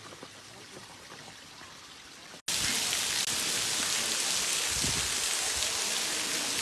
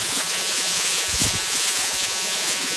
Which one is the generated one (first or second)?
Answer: second